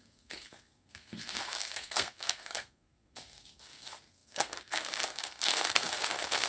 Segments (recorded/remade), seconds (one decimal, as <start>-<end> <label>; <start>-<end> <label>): 0.0-6.5 remade